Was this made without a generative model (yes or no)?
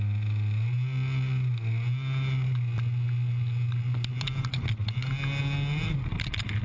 yes